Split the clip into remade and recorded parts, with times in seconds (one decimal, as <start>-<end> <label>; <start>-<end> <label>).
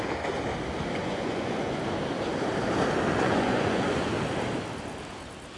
0.0-1.0 recorded; 1.0-1.8 remade; 1.8-3.1 recorded; 3.1-4.1 remade; 4.1-5.6 recorded